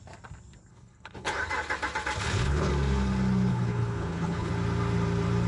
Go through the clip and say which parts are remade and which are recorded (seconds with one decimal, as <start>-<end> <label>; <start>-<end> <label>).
0.0-0.7 recorded; 0.7-1.4 remade; 1.4-2.2 recorded; 2.2-2.7 remade; 2.7-3.5 recorded; 3.5-4.5 remade; 4.5-5.5 recorded

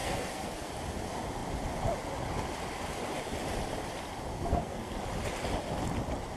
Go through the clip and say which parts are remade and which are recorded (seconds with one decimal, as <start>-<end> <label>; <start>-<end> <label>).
0.0-0.7 remade; 0.7-4.3 recorded; 4.3-5.0 remade; 5.0-6.4 recorded

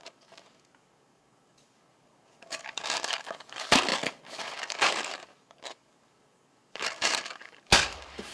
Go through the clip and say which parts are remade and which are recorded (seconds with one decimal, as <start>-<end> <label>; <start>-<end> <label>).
0.0-8.3 remade

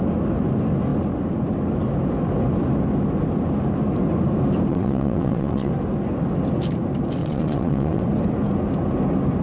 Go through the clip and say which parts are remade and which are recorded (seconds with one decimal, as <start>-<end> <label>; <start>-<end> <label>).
0.0-4.7 recorded; 4.7-5.7 remade; 5.7-7.2 recorded; 7.2-8.0 remade; 8.0-9.4 recorded

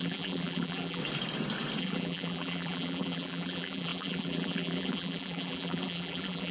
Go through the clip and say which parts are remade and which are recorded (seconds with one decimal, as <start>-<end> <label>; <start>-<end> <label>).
0.0-1.0 remade; 1.0-1.8 recorded; 1.8-6.5 remade

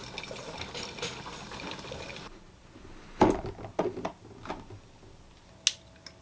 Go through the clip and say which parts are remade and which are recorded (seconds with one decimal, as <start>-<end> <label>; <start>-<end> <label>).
0.0-6.2 recorded

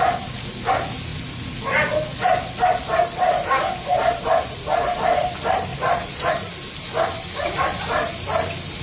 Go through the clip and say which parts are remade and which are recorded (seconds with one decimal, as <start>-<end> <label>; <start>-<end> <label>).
0.0-5.7 recorded; 5.7-6.3 remade; 6.3-8.8 recorded